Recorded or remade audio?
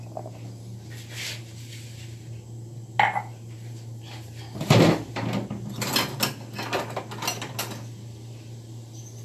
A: recorded